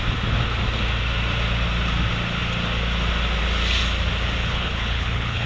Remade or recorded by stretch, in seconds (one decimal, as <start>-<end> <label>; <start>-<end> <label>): 0.0-4.4 recorded; 4.4-5.5 remade